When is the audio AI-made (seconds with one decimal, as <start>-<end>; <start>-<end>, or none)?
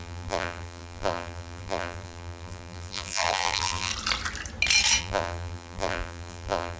0.0-3.9; 5.0-6.8